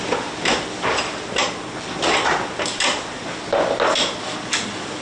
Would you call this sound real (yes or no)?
yes